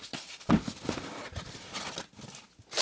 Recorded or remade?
recorded